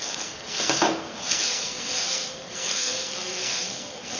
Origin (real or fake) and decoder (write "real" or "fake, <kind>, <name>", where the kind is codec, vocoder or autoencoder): fake, codec, SNAC